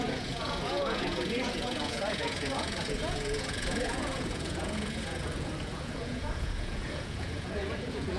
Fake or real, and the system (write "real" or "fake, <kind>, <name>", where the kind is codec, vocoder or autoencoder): fake, vocoder, Vocos